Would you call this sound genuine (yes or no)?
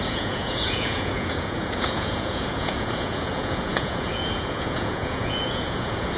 no